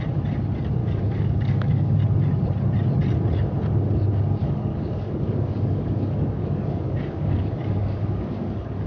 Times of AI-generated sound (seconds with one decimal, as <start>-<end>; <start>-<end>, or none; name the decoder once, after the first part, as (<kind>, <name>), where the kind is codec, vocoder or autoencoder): 0.8-2.0 (codec, DAC); 4.4-8.9